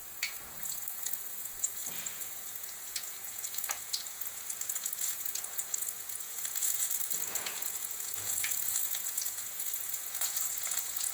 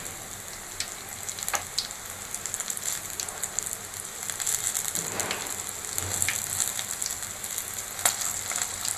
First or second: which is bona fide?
second